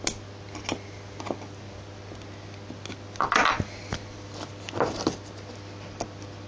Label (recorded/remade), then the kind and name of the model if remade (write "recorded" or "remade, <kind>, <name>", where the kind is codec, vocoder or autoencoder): recorded